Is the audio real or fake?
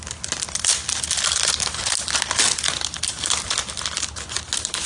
real